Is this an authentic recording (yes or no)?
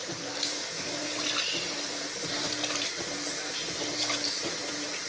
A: yes